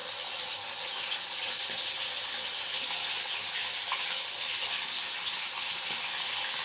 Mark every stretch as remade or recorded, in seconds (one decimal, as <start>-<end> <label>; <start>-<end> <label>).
0.0-6.6 recorded